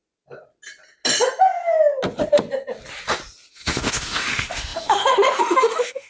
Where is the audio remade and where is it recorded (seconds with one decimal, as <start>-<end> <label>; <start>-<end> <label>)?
0.0-3.5 recorded; 3.5-6.1 remade